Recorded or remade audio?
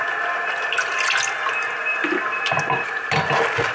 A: recorded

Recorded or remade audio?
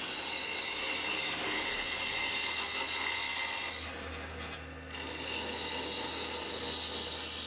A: recorded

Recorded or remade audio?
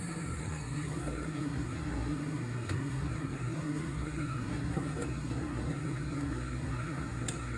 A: remade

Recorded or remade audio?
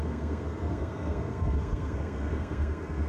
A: remade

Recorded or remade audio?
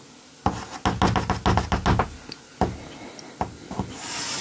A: recorded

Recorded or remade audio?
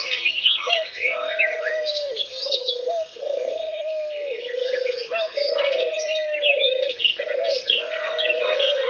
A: remade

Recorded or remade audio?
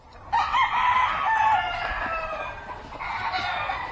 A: recorded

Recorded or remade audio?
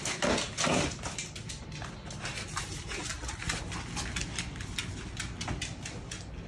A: recorded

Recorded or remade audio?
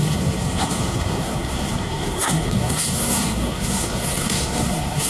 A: remade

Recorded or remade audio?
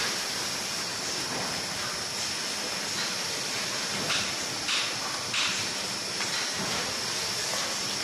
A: recorded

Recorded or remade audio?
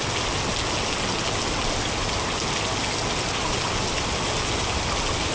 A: recorded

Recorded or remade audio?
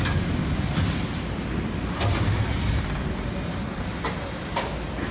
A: recorded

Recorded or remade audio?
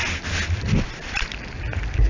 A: recorded